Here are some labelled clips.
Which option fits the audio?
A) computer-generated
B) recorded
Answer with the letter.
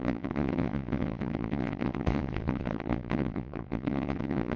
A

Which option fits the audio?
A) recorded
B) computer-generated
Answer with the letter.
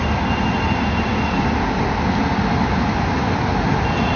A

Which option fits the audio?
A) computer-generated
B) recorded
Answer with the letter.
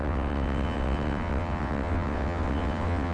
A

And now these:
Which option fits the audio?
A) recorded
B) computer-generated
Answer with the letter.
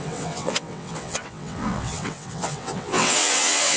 B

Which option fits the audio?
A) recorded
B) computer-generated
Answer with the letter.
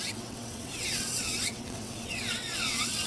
B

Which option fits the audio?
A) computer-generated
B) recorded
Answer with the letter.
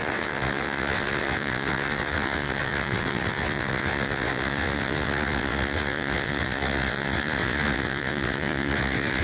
A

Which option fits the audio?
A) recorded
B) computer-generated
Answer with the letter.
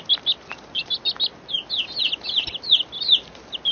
A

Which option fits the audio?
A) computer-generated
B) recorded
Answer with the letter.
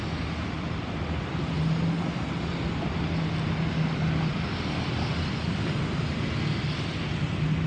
B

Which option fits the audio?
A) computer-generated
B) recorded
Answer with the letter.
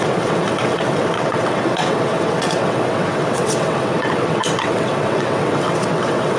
A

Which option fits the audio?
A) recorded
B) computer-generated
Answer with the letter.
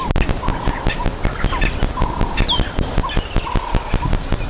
A